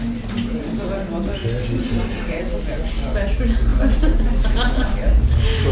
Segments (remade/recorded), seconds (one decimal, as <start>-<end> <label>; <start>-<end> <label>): 0.0-3.7 recorded; 3.7-5.2 remade; 5.2-5.7 recorded